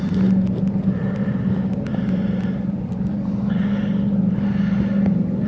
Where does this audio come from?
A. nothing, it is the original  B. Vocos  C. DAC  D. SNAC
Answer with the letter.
A